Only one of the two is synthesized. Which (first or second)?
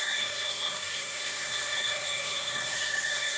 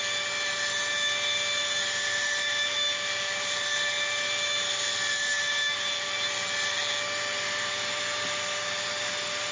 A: first